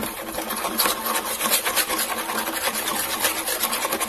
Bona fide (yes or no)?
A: yes